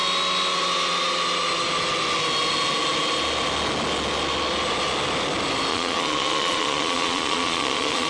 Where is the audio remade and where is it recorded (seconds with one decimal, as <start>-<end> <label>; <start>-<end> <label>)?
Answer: 0.0-5.7 recorded; 5.7-8.1 remade